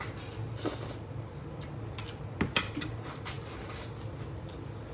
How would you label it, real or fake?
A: real